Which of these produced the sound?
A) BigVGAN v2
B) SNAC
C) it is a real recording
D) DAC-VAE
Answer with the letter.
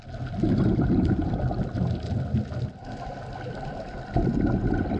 C